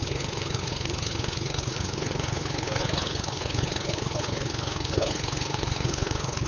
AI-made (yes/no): yes